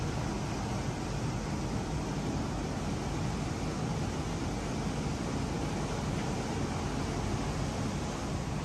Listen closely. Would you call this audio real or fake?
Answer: real